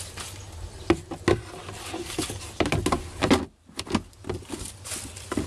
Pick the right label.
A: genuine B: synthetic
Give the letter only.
A